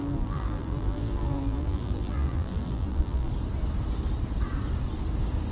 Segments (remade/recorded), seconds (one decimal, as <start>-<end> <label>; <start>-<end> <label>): 0.0-3.3 remade; 3.3-5.5 recorded